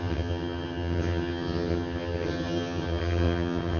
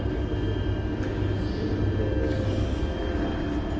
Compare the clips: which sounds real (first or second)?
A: second